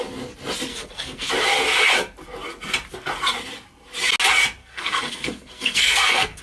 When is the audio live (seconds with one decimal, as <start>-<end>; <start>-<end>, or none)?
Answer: 0.0-0.7; 1.3-4.6